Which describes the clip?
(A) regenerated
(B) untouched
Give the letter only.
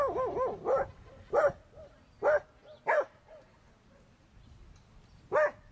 B